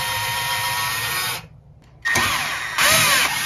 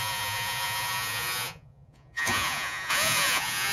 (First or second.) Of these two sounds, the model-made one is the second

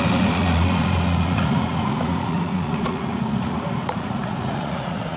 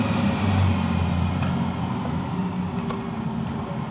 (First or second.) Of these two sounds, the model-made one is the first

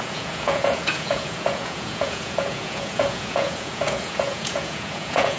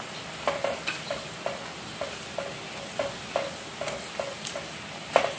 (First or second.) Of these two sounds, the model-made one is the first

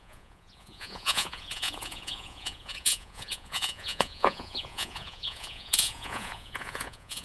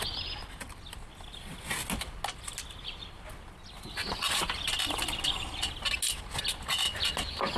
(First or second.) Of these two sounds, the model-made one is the first